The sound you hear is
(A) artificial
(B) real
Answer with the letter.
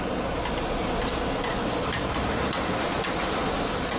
B